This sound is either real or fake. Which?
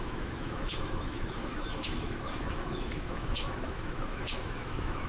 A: fake